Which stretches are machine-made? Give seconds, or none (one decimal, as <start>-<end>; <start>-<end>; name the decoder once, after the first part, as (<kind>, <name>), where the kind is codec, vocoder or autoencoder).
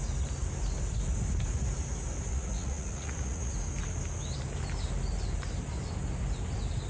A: 2.3-3.5 (vocoder, Vocos)